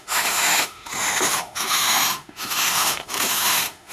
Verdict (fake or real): fake